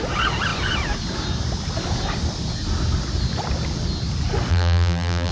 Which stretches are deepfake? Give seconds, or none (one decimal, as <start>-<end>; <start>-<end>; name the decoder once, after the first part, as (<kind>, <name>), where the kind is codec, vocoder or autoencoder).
4.5-5.3 (vocoder, BigVGAN v2)